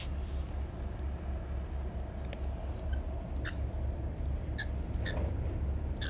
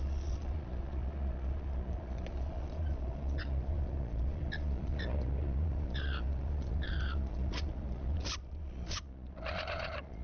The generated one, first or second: second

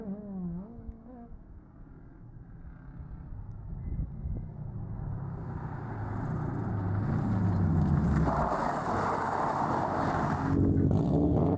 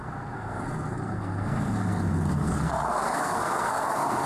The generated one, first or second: second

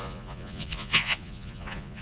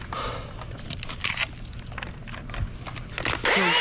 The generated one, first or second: first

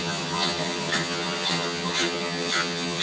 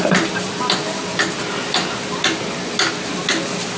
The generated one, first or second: first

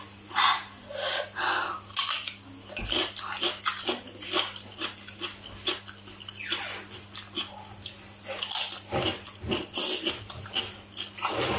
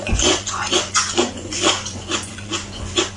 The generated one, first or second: second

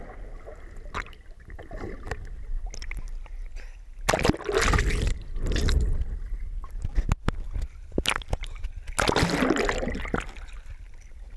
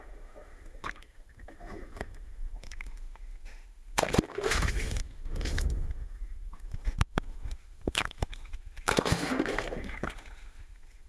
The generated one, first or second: second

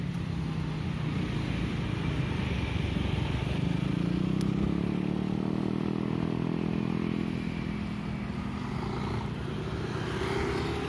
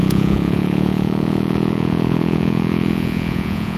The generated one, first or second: second